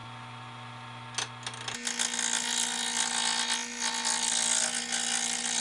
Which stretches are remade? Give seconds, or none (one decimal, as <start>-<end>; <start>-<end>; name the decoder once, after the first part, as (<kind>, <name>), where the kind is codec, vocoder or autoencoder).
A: none